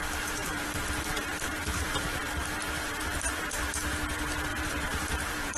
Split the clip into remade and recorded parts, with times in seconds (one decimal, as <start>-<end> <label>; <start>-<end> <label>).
0.0-0.4 recorded; 0.4-3.8 remade; 3.8-4.5 recorded; 4.5-5.6 remade